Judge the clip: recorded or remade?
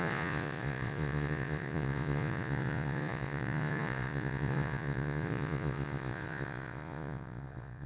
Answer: remade